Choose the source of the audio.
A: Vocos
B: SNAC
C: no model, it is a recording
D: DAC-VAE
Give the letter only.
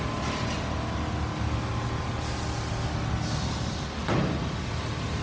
C